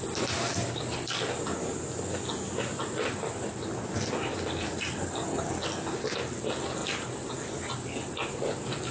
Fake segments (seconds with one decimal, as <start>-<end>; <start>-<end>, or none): none